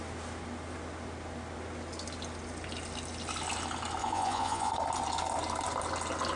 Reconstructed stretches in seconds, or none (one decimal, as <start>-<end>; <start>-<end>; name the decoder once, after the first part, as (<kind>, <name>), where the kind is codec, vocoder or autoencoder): 4.0-4.7 (vocoder, Vocos)